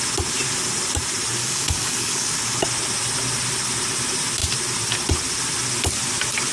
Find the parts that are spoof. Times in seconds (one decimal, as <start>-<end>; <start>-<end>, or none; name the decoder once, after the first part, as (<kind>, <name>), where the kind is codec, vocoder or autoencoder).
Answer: 1.4-2.3 (codec, DAC)